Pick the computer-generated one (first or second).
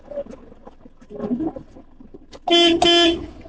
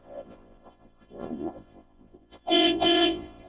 second